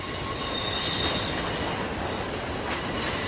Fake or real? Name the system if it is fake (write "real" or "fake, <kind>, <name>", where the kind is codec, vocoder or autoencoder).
real